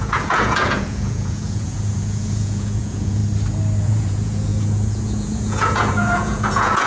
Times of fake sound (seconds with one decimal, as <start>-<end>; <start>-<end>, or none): 0.0-3.2; 3.8-6.9